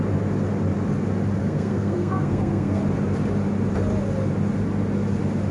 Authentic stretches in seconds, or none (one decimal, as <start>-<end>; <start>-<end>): 0.0-1.4; 2.8-5.5